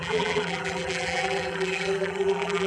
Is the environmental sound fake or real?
fake